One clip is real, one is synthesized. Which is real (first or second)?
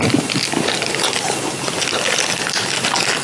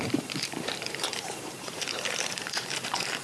first